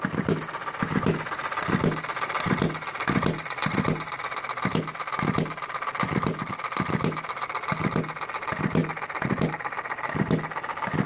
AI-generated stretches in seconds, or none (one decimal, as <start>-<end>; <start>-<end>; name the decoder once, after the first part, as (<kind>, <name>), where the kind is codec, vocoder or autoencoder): none